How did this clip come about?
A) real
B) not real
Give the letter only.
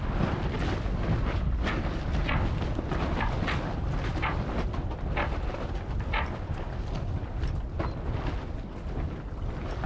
A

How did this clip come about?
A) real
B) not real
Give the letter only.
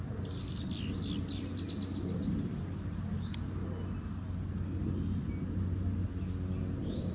A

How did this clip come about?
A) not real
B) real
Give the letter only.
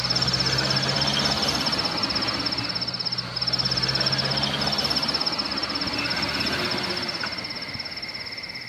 B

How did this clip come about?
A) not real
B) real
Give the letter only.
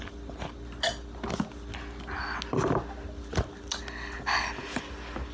B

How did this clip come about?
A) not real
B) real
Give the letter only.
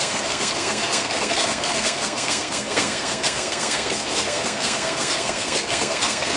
A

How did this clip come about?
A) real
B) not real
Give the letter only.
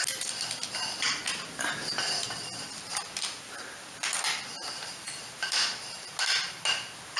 A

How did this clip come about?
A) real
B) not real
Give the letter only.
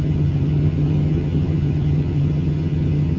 B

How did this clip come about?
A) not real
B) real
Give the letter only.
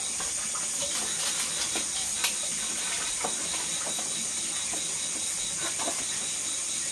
B